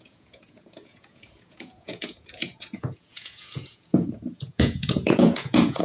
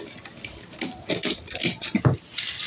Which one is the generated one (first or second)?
first